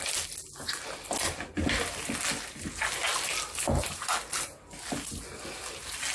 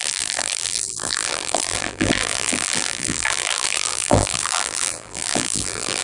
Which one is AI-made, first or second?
second